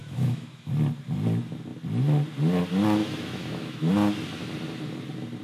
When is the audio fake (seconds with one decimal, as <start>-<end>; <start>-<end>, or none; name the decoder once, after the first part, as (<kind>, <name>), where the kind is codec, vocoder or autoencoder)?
0.0-0.7 (autoencoder, DAC-VAE); 3.0-3.9